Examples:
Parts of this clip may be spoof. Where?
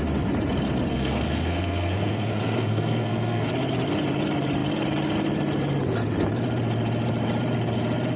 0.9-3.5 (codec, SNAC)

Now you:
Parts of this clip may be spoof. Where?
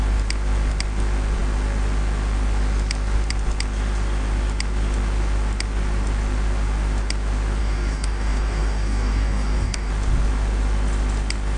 7.6-9.9 (codec, DAC)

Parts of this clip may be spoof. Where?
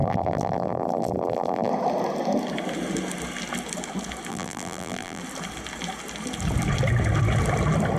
0.0-1.7 (vocoder, BigVGAN v2); 4.3-5.2